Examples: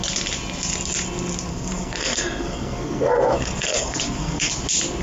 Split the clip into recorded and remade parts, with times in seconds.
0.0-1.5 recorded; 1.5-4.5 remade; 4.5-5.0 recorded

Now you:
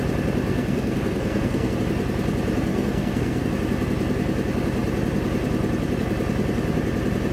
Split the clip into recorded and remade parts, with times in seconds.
0.0-0.5 recorded; 0.5-1.8 remade; 1.8-2.7 recorded; 2.7-3.5 remade; 3.5-7.3 recorded

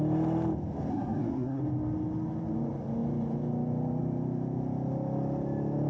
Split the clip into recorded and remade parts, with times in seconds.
0.0-0.9 recorded; 0.9-1.6 remade; 1.6-5.9 recorded

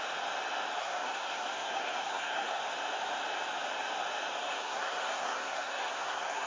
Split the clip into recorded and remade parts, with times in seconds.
0.0-0.8 recorded; 0.8-2.6 remade; 2.6-4.4 recorded; 4.4-6.5 remade

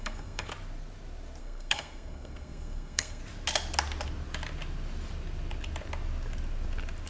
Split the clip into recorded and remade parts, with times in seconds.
0.0-0.5 remade; 0.5-1.4 recorded; 1.4-3.2 remade; 3.2-7.1 recorded

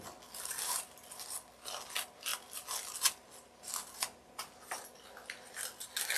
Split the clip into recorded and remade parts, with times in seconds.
0.0-6.2 recorded

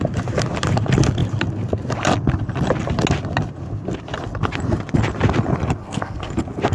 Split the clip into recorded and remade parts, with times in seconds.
0.0-5.8 recorded; 5.8-6.3 remade; 6.3-6.7 recorded

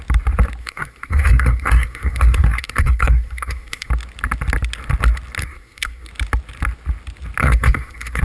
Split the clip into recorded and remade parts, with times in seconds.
0.0-0.6 recorded; 0.6-3.9 remade; 3.9-5.4 recorded; 5.4-6.1 remade; 6.1-7.4 recorded; 7.4-8.2 remade